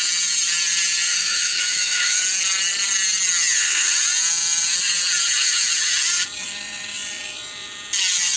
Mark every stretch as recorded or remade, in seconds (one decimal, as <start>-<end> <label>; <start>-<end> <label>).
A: 0.0-1.1 recorded; 1.1-2.2 remade; 2.2-8.4 recorded